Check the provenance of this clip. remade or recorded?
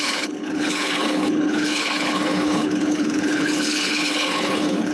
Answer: remade